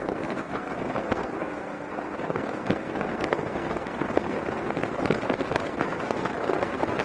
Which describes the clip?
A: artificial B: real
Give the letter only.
A